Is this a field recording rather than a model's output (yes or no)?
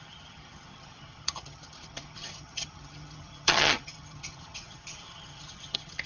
no